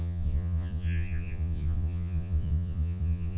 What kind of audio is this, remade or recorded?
remade